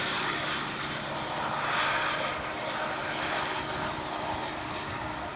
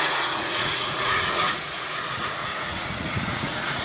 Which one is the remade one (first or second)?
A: second